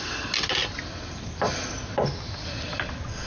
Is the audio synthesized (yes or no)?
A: no